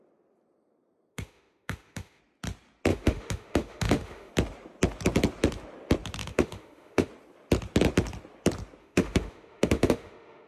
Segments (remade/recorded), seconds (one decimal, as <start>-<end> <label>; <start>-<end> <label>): 0.0-1.1 recorded; 1.1-2.2 remade; 2.2-2.9 recorded; 2.9-4.3 remade; 4.3-6.2 recorded; 6.2-7.1 remade; 7.1-8.8 recorded; 8.8-10.5 remade